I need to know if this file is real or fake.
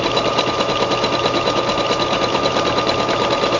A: fake